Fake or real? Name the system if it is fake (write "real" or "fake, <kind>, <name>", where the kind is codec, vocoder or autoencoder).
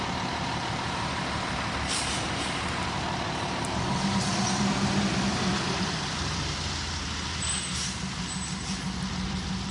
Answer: fake, vocoder, BigVGAN v2